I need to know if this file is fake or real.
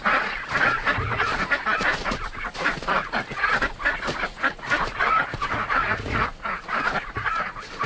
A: fake